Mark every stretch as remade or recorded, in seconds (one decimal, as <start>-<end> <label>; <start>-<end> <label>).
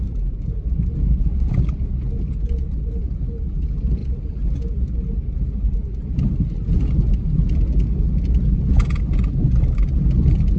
0.0-10.6 recorded